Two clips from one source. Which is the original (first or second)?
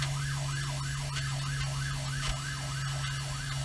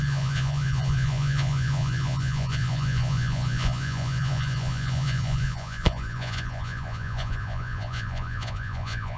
first